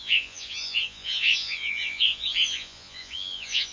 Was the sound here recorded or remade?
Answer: remade